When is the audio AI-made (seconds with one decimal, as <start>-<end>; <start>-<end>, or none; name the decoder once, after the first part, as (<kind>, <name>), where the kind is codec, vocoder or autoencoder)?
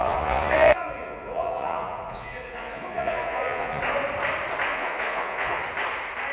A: 0.0-3.8 (vocoder, Vocos); 4.7-5.6